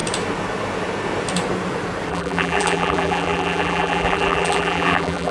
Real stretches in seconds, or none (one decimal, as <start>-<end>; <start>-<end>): 0.0-2.1